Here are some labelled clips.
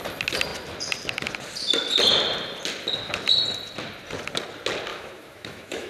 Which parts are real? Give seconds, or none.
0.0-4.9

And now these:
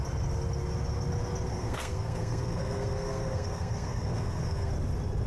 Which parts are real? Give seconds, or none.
0.0-1.5; 4.7-5.3

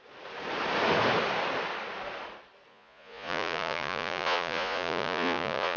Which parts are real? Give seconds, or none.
0.0-2.7

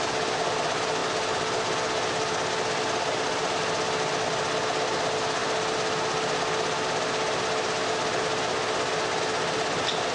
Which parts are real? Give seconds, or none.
0.0-10.1

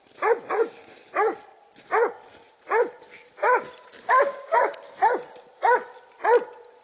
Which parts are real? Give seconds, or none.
0.0-4.3; 5.0-6.8

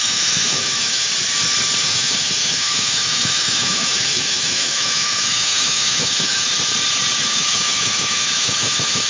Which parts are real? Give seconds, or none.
1.1-1.8; 6.5-7.2